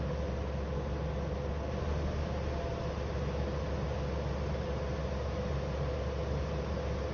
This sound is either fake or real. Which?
real